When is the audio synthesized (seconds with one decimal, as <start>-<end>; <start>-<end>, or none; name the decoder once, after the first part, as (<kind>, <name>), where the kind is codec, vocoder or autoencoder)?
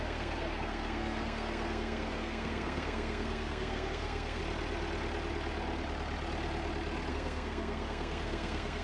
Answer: 0.0-4.4 (codec, SNAC); 7.1-8.8